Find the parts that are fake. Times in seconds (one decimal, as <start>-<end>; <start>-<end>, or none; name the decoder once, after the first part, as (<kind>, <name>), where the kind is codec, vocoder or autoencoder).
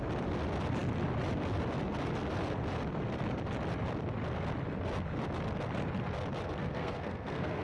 6.6-7.6 (codec, SNAC)